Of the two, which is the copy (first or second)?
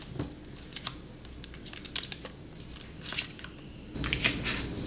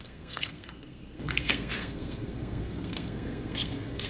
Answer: second